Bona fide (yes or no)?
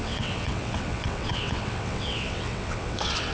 no